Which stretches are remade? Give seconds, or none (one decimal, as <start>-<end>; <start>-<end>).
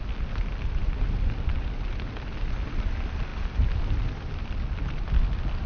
none